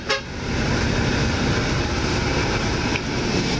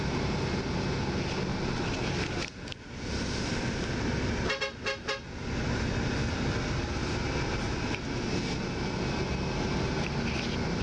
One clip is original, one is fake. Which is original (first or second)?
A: second